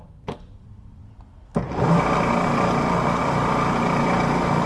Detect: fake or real real